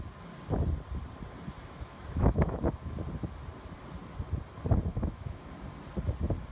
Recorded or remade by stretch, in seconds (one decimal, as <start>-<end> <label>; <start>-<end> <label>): 0.0-1.6 recorded; 1.6-2.6 remade; 2.6-4.9 recorded; 4.9-5.5 remade; 5.5-6.5 recorded